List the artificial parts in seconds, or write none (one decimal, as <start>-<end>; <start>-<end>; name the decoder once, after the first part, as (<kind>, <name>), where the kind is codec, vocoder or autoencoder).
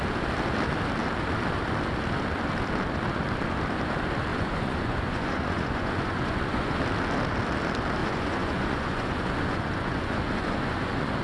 4.3-6.8 (vocoder, Vocos); 8.0-11.2